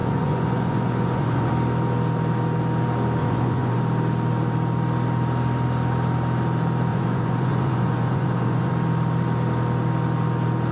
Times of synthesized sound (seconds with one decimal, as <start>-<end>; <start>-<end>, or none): 0.0-1.5; 3.2-3.8; 6.9-8.7